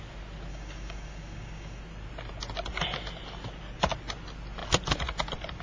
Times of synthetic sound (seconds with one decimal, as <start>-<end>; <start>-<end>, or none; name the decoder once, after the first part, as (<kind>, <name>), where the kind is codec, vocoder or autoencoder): 0.5-1.8 (codec, DAC)

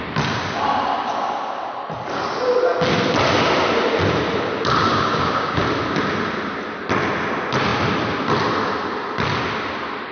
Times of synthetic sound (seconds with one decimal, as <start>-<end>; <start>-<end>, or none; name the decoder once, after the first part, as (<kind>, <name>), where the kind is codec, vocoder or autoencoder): 4.9-5.6 (codec, DAC)